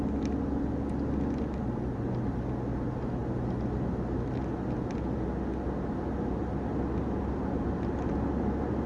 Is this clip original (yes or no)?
yes